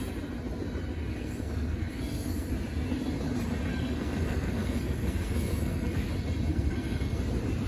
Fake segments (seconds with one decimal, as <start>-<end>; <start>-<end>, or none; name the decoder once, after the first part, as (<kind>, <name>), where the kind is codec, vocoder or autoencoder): 1.1-2.5 (codec, SNAC); 3.7-6.1; 6.5-7.2